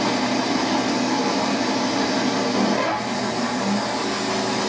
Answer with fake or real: real